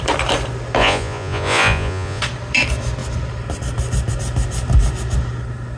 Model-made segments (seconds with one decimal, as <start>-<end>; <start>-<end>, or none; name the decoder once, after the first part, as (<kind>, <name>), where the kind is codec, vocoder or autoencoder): 0.8-2.2 (vocoder, Vocos)

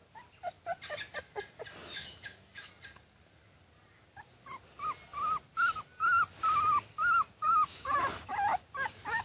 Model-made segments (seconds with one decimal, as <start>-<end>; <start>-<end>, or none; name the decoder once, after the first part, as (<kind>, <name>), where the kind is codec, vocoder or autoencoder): 1.8-2.7 (autoencoder, DAC-VAE); 7.4-8.6

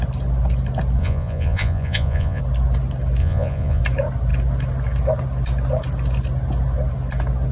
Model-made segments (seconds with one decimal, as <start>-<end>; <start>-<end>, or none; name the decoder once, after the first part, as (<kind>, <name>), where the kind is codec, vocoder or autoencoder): 1.0-2.4 (vocoder, Vocos); 3.2-3.8